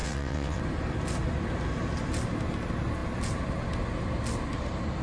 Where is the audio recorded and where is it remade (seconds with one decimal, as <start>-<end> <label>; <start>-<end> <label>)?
0.0-0.6 remade; 0.6-5.0 recorded